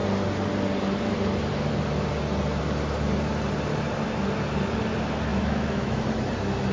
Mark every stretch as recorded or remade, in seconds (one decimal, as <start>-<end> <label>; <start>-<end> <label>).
0.0-5.3 recorded; 5.3-6.1 remade; 6.1-6.7 recorded